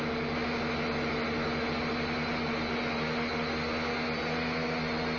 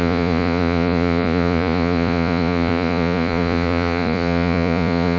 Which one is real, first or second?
first